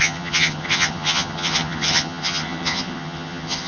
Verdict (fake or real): fake